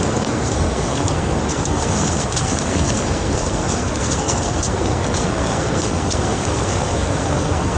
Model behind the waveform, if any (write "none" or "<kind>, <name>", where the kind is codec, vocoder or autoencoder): codec, SNAC